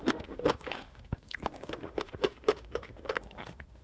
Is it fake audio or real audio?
fake